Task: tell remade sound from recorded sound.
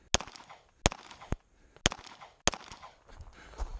recorded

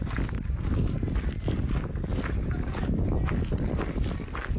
recorded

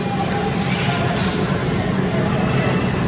recorded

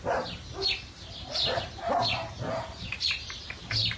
recorded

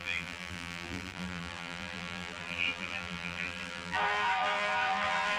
remade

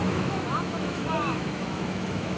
remade